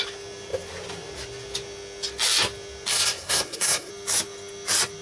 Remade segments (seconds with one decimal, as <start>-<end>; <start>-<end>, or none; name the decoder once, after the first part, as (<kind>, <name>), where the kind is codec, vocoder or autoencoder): 2.9-3.9 (codec, SNAC)